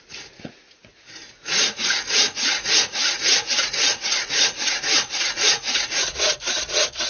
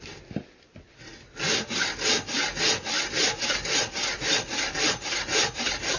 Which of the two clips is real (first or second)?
second